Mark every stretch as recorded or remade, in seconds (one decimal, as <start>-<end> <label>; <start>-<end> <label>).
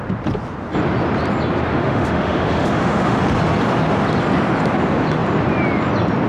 0.0-1.7 recorded; 1.7-3.2 remade; 3.2-6.3 recorded